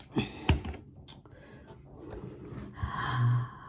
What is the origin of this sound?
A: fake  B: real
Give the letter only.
B